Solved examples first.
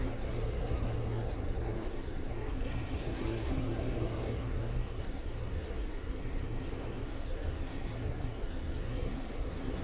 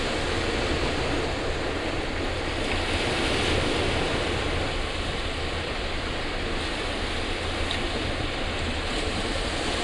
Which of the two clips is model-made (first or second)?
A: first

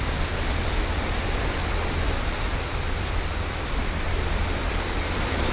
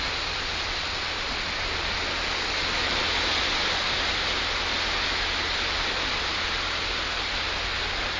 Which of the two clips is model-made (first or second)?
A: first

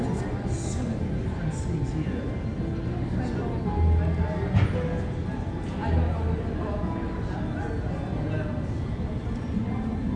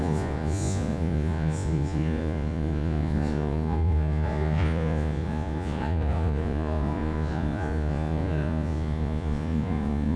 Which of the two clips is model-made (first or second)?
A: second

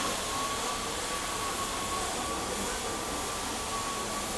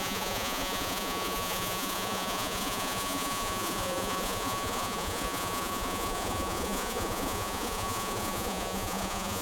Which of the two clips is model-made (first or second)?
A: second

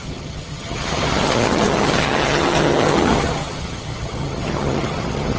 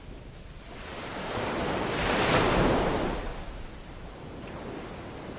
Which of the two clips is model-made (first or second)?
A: first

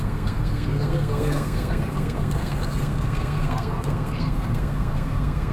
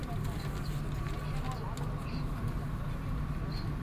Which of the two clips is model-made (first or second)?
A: first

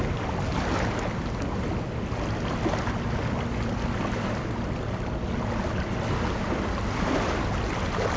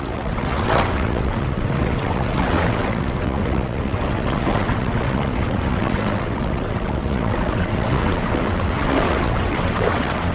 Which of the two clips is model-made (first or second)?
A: second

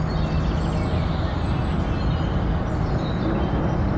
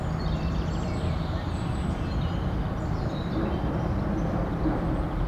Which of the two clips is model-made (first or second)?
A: second